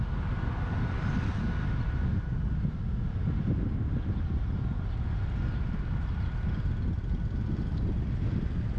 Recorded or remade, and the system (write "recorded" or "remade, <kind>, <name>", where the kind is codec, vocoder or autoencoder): recorded